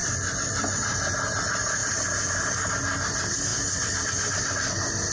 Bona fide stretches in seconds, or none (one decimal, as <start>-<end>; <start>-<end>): 0.0-1.8; 2.7-3.5; 4.1-5.1